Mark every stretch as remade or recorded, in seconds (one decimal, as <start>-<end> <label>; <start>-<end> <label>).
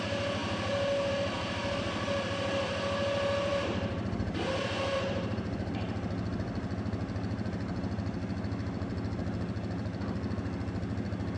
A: 0.0-3.5 recorded; 3.5-5.7 remade; 5.7-11.4 recorded